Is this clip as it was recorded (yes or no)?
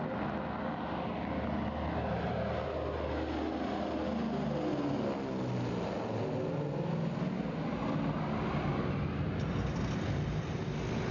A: yes